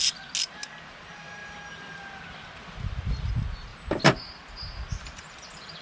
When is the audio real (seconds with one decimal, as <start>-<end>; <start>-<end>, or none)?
0.0-5.8